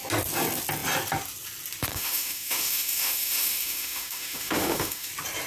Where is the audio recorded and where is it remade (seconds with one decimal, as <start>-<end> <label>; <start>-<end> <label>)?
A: 0.0-1.9 recorded; 1.9-5.1 remade; 5.1-5.5 recorded

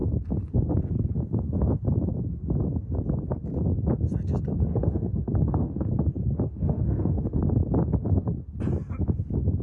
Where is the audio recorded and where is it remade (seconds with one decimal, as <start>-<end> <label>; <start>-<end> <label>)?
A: 0.0-4.7 recorded; 4.7-5.9 remade; 5.9-6.5 recorded; 6.5-7.4 remade; 7.4-9.6 recorded

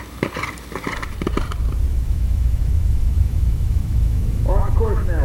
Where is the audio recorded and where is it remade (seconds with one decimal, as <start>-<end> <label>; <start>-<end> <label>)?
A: 0.0-1.9 recorded; 1.9-5.2 remade

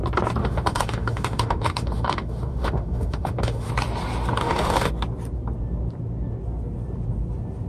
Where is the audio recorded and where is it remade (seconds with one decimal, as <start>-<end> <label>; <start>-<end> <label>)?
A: 0.0-0.4 recorded; 0.4-3.7 remade; 3.7-4.4 recorded; 4.4-4.9 remade; 4.9-7.7 recorded

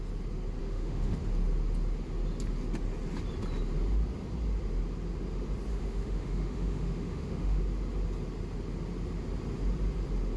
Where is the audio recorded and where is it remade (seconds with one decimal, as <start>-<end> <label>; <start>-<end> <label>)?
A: 0.0-0.6 recorded; 0.6-1.1 remade; 1.1-5.7 recorded; 5.7-7.6 remade; 7.6-10.4 recorded

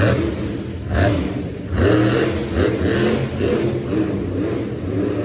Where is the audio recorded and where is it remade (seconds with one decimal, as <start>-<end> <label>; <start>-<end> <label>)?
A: 0.0-0.7 recorded; 0.7-1.3 remade; 1.3-5.2 recorded

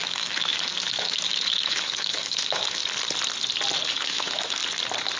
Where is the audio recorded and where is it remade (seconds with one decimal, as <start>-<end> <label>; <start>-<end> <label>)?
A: 0.0-2.8 remade; 2.8-3.9 recorded; 3.9-4.6 remade; 4.6-5.2 recorded